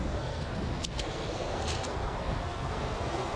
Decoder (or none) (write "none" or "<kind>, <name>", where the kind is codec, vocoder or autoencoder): codec, SNAC